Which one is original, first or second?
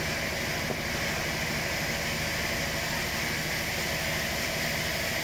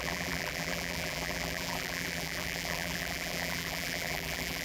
first